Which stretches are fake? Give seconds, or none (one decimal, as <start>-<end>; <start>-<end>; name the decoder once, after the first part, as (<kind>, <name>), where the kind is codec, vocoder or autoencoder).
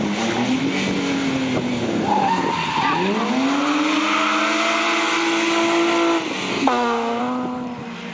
6.5-7.2 (codec, SNAC)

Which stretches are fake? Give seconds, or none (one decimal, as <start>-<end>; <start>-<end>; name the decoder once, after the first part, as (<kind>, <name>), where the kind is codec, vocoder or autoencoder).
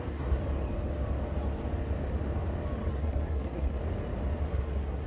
0.0-0.4 (codec, SNAC); 2.9-3.8; 4.4-5.1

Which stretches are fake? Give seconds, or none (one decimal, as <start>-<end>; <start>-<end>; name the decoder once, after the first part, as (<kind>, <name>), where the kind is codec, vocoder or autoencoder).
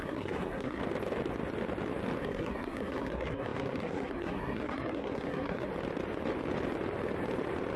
0.0-0.8 (codec, SNAC); 2.2-5.7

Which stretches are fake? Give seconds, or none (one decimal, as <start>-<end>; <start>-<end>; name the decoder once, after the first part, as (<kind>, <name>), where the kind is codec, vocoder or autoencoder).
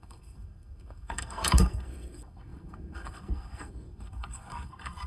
0.0-5.1 (codec, SNAC)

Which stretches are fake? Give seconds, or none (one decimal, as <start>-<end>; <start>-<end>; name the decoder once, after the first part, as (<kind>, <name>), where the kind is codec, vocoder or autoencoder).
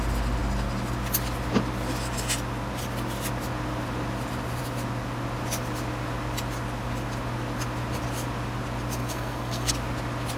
9.0-9.7 (codec, SNAC)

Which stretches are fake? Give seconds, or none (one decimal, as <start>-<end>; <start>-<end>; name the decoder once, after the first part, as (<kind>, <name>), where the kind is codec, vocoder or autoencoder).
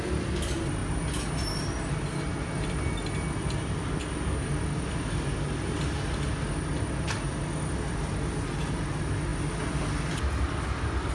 none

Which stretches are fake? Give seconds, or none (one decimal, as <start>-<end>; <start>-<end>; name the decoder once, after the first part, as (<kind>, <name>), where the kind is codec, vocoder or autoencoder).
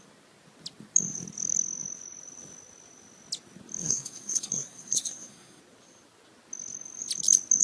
3.8-5.6 (codec, SNAC)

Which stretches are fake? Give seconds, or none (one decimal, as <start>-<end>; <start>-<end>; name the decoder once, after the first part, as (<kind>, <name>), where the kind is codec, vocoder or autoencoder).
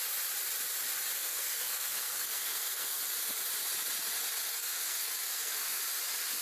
1.2-3.0 (codec, SNAC); 4.5-5.8